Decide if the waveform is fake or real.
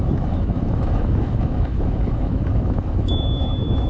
fake